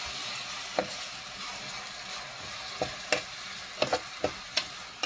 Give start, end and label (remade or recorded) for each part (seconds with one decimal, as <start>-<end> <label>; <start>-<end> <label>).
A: 0.0-5.1 recorded